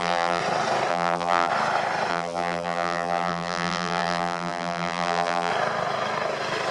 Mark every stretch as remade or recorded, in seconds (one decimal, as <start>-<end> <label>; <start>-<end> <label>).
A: 0.0-0.4 remade; 0.4-0.9 recorded; 0.9-1.5 remade; 1.5-2.1 recorded; 2.1-5.5 remade; 5.5-6.7 recorded